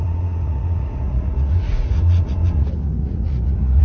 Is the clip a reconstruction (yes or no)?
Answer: yes